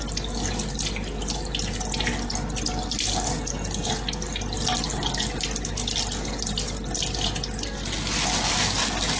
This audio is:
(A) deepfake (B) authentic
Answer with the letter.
B